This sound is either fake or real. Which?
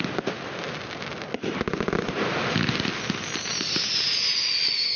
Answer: real